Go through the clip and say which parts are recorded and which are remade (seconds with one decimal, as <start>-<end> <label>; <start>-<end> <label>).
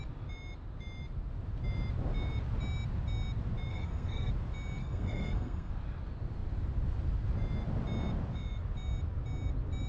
0.0-3.7 recorded; 3.7-4.3 remade; 4.3-4.8 recorded; 4.8-5.7 remade; 5.7-9.9 recorded